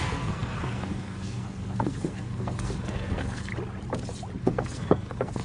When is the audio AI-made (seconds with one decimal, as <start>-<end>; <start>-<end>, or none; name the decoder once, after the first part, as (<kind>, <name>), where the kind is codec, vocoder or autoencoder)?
0.0-3.5 (codec, SNAC); 4.4-5.4